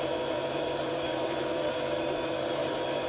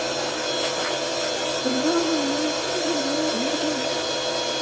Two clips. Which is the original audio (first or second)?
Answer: second